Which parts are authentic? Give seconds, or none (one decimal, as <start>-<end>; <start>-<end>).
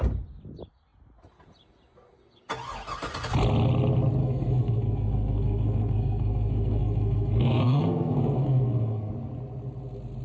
0.0-4.2; 9.1-10.2